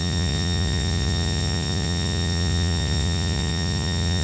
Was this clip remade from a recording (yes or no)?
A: yes